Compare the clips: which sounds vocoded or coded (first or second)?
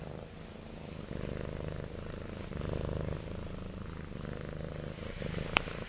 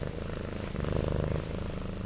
first